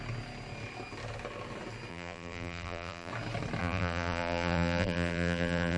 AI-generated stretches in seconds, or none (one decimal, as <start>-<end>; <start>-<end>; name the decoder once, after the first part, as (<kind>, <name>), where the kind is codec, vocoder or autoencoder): 1.9-3.1 (vocoder, BigVGAN v2); 3.6-5.8